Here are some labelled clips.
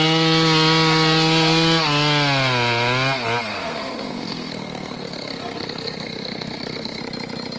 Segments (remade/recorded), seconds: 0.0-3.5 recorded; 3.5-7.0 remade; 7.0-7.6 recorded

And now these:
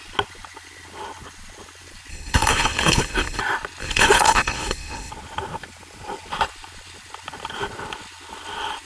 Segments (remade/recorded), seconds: 0.0-2.1 recorded; 2.1-3.4 remade; 3.4-3.8 recorded; 3.8-5.1 remade; 5.1-8.9 recorded

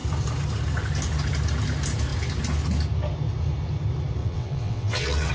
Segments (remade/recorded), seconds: 0.0-4.2 recorded; 4.2-5.3 remade

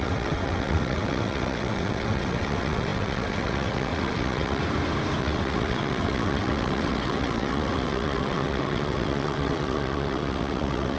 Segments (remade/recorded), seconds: 0.0-4.6 remade; 4.6-5.2 recorded; 5.2-11.0 remade

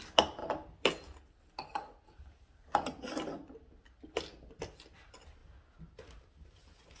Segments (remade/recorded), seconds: 0.0-7.0 recorded